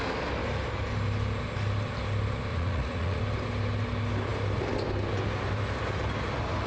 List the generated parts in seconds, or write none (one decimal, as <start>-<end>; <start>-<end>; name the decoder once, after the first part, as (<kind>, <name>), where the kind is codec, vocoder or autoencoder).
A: 2.5-3.2 (vocoder, Vocos)

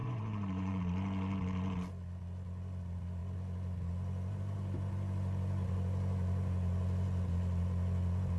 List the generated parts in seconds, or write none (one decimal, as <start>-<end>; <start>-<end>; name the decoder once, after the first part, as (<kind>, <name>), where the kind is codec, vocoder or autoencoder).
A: 0.0-0.8 (vocoder, Vocos)